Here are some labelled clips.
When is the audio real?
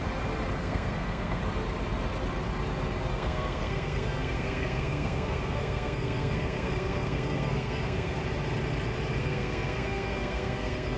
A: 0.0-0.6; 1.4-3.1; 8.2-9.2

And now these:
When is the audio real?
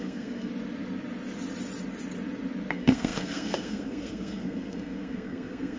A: 0.5-2.7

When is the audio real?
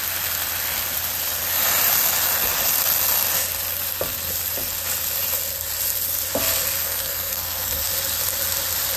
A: 0.0-6.8; 7.9-9.0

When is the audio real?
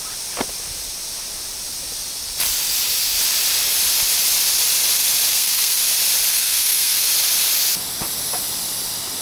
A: 0.0-5.3; 5.8-6.3; 7.1-9.2